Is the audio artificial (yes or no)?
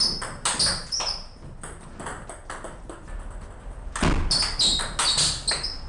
no